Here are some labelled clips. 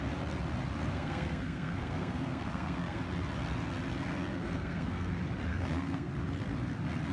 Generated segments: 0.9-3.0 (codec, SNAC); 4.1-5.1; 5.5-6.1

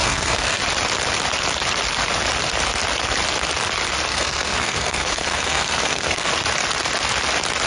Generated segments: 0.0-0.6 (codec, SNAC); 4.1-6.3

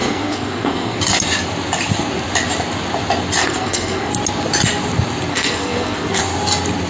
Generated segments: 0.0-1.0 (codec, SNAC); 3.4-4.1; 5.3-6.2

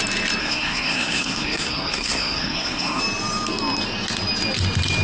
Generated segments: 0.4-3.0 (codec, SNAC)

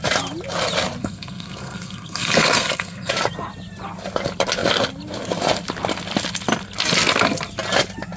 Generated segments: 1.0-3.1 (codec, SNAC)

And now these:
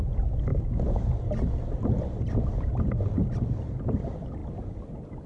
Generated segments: none

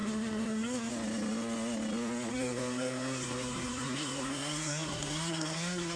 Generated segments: 0.0-0.9 (codec, SNAC); 2.3-6.0

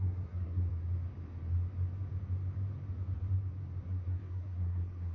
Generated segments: 0.0-0.7 (codec, SNAC); 3.8-5.1